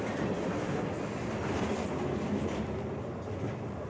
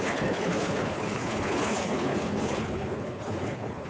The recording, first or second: first